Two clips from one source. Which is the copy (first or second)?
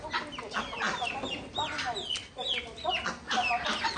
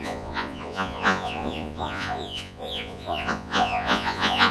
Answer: second